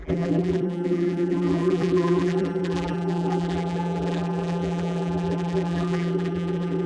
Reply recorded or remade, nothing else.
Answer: remade